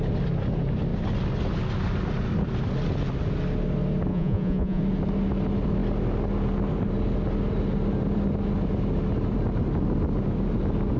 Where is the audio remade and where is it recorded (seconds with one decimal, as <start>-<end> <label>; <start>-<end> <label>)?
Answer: 0.0-4.1 recorded; 4.1-4.8 remade; 4.8-11.0 recorded